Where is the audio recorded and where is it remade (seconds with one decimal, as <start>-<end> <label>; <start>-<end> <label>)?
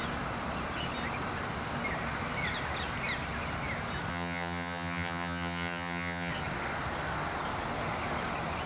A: 0.0-4.1 recorded; 4.1-6.3 remade; 6.3-8.7 recorded